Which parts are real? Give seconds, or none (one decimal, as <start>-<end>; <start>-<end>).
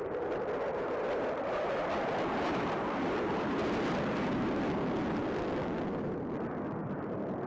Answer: 0.0-0.7; 5.2-7.5